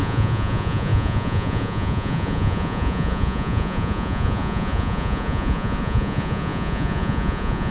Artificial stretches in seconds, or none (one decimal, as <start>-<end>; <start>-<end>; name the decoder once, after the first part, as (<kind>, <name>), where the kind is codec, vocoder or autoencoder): 0.0-7.7 (vocoder, Vocos)